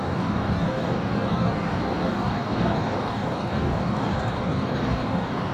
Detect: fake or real fake